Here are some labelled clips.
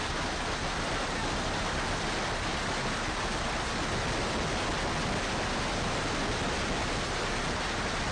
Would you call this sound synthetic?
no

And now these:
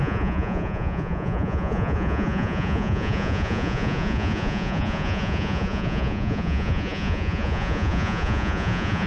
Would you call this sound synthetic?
yes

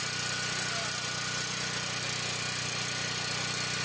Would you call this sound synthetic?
no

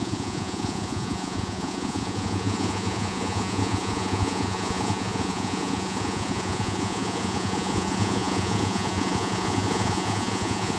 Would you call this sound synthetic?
yes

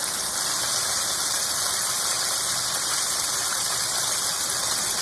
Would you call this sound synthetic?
no